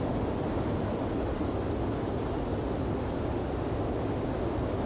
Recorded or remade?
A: recorded